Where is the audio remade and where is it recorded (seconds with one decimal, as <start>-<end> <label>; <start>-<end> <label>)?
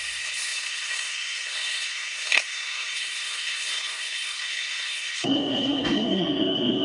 0.0-6.8 remade